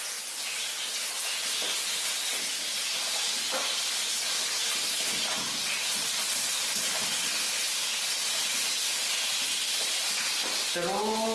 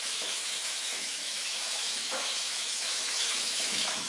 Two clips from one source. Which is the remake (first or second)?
second